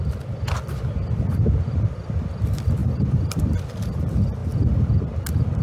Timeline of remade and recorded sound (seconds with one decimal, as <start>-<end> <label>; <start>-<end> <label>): 0.0-2.8 recorded; 2.8-3.4 remade; 3.4-5.6 recorded